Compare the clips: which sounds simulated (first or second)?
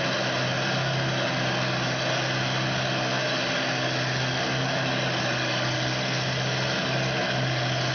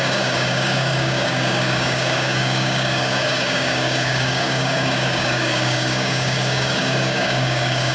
second